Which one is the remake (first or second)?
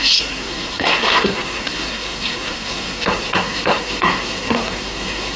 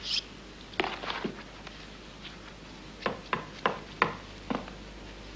first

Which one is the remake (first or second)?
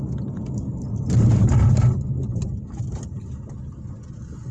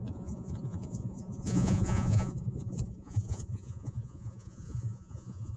second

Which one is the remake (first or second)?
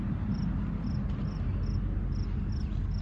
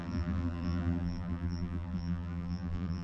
second